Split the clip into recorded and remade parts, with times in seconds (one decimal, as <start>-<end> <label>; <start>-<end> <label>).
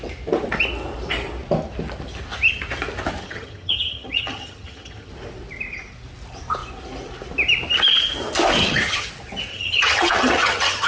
0.0-3.2 recorded; 3.2-5.1 remade; 5.1-8.6 recorded; 8.6-9.1 remade; 9.1-9.5 recorded; 9.5-10.9 remade